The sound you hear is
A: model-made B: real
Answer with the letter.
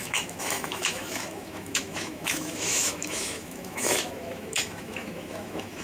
A